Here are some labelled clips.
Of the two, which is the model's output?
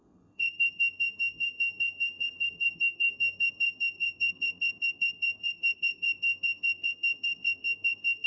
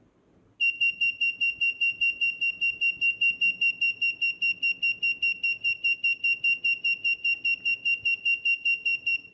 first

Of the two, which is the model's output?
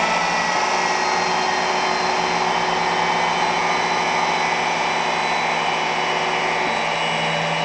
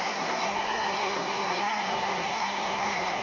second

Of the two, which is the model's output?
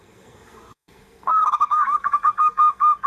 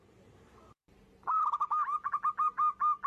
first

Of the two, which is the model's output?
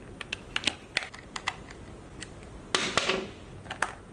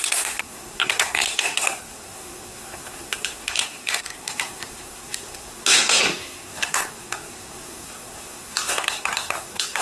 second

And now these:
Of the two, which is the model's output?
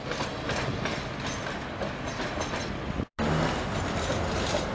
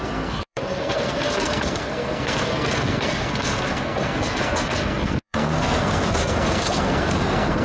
second